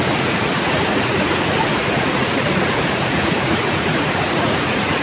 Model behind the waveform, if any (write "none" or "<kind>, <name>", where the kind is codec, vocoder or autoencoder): vocoder, Vocos